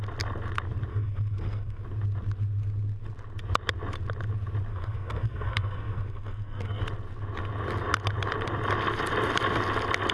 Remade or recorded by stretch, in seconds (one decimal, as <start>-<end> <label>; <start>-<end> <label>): 0.0-0.9 recorded; 0.9-1.8 remade; 1.8-4.7 recorded; 4.7-6.8 remade; 6.8-10.1 recorded

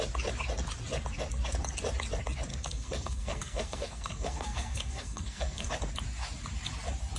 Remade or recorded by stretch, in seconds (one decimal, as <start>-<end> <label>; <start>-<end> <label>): 0.0-2.5 recorded; 2.5-5.7 remade; 5.7-7.2 recorded

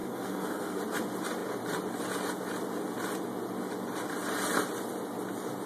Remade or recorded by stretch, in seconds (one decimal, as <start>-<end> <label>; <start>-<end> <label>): 0.0-0.8 remade; 0.8-5.7 recorded

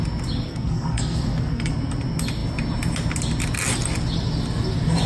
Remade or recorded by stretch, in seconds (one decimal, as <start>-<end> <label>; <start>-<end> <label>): 0.0-0.5 recorded; 0.5-1.7 remade; 1.7-5.1 recorded

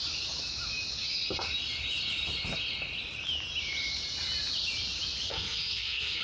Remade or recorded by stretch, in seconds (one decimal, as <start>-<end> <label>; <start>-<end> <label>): 0.0-5.3 recorded; 5.3-6.2 remade

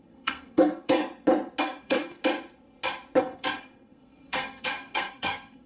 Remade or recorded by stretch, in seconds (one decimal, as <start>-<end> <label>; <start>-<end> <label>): 0.0-1.0 remade; 1.0-1.6 recorded; 1.6-2.2 remade; 2.2-3.2 recorded; 3.2-5.7 remade

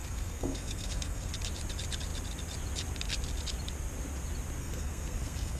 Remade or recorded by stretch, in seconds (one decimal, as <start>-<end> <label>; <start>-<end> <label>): 0.0-1.3 remade; 1.3-4.6 recorded; 4.6-5.6 remade

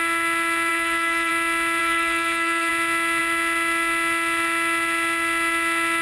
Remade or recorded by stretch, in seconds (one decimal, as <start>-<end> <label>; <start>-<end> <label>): 0.0-0.7 recorded; 0.7-1.3 remade; 1.3-1.8 recorded; 1.8-2.7 remade; 2.7-6.0 recorded